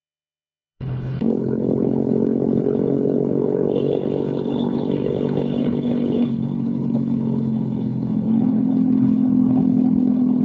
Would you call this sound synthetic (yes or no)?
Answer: yes